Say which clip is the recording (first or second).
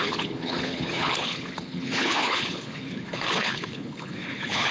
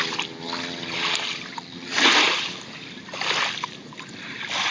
second